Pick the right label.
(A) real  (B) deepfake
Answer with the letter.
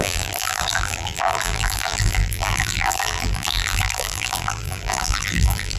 B